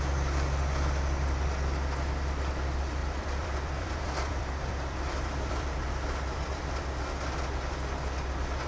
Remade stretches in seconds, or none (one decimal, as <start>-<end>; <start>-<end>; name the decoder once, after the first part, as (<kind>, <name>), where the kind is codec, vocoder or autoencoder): 3.0-6.8 (vocoder, BigVGAN v2)